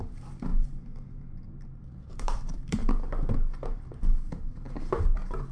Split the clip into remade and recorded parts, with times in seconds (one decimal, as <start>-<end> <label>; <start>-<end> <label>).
0.0-2.8 remade; 2.8-3.9 recorded; 3.9-5.5 remade

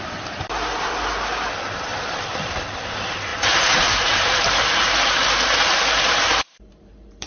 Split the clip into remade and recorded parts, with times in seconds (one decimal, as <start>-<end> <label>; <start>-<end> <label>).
0.0-1.9 recorded; 1.9-2.6 remade; 2.6-3.3 recorded; 3.3-7.3 remade

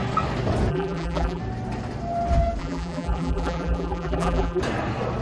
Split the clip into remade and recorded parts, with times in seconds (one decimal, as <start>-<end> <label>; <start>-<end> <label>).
0.0-0.7 recorded; 0.7-1.4 remade; 1.4-2.6 recorded; 2.6-4.6 remade; 4.6-5.2 recorded

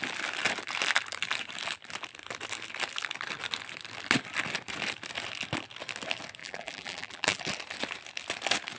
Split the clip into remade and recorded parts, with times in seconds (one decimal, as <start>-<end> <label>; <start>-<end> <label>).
0.0-6.4 recorded; 6.4-7.4 remade; 7.4-8.8 recorded

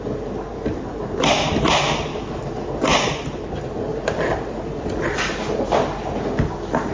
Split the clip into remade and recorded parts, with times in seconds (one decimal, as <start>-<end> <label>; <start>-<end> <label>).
0.0-0.5 recorded; 0.5-1.7 remade; 1.7-2.1 recorded; 2.1-3.5 remade; 3.5-3.9 recorded; 3.9-4.9 remade; 4.9-6.9 recorded